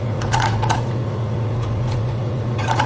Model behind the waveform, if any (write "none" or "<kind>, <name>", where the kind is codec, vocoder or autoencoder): vocoder, Vocos